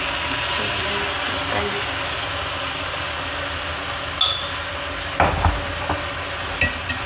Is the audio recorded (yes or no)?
yes